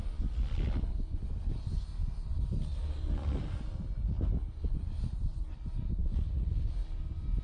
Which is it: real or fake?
real